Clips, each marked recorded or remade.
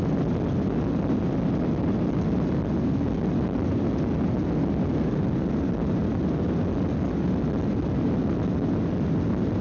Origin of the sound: recorded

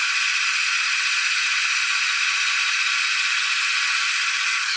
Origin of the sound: recorded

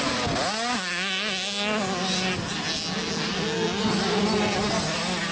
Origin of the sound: recorded